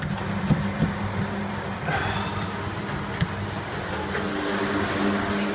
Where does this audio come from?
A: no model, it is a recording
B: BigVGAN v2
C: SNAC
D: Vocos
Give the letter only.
A